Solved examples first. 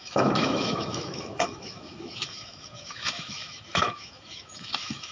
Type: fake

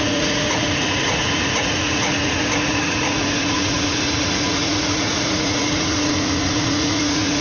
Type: fake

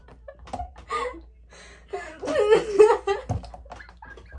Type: real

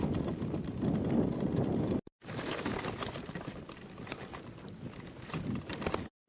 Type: real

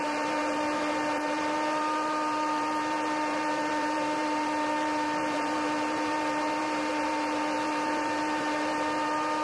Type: fake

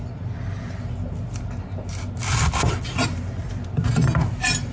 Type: real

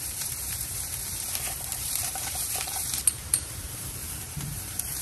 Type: fake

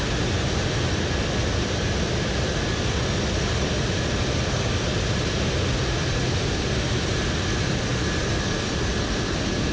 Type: real